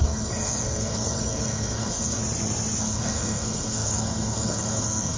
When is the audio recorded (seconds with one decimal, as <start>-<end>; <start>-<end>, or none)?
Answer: 2.2-2.8